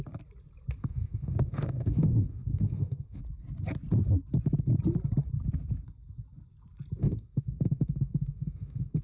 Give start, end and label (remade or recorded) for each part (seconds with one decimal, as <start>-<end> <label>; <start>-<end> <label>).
0.0-0.8 recorded; 0.8-3.2 remade; 3.2-7.0 recorded; 7.0-9.0 remade